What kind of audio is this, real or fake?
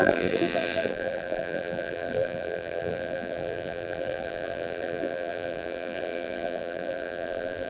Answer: fake